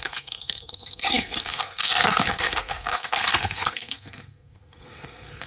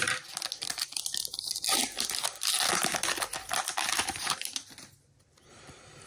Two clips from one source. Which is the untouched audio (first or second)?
second